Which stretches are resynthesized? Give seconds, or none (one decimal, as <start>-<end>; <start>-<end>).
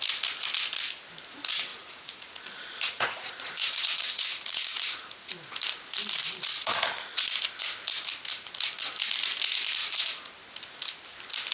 1.7-5.3; 6.5-7.2; 9.8-10.3